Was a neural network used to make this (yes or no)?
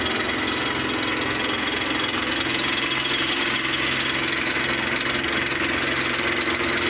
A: no